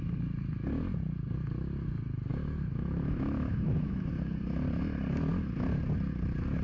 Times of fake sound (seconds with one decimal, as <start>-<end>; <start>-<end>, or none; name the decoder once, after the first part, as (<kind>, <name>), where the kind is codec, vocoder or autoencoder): 2.3-4.1 (autoencoder, DAC-VAE)